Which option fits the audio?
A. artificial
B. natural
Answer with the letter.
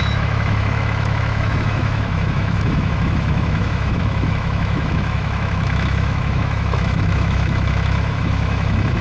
A